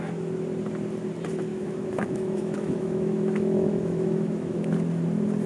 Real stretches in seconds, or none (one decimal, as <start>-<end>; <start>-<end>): 0.0-1.5; 4.7-5.5